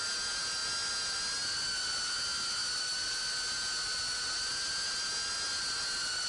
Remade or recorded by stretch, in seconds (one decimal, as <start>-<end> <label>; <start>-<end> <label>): 0.0-6.3 recorded